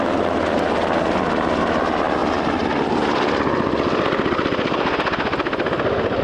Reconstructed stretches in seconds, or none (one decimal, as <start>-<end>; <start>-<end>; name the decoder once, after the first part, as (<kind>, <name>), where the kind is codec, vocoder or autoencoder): none